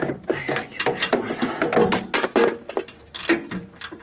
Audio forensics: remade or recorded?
recorded